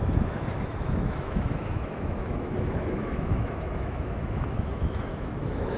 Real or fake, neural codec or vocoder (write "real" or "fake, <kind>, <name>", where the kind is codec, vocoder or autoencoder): fake, autoencoder, DAC-VAE